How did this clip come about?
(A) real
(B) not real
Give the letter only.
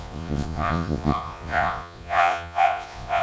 B